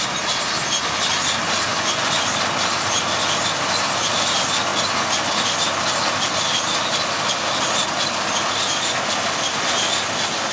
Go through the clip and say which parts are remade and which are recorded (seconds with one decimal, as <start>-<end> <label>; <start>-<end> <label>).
0.0-1.7 recorded; 1.7-2.3 remade; 2.3-10.5 recorded